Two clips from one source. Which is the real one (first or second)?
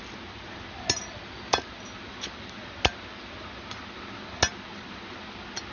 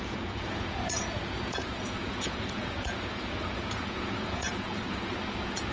first